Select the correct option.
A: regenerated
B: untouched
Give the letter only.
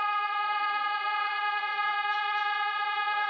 A